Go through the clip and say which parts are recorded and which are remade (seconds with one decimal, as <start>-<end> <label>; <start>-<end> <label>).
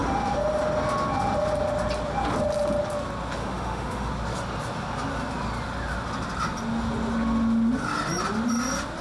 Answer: 0.0-3.4 recorded; 3.4-4.1 remade; 4.1-9.0 recorded